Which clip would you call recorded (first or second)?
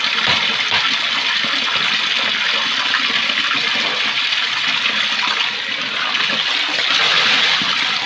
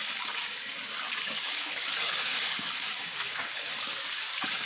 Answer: first